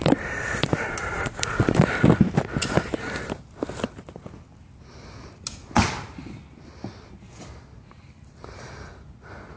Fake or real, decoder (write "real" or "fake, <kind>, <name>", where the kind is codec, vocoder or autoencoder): real